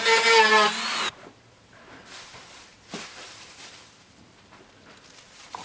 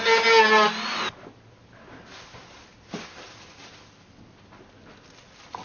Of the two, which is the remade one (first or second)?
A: first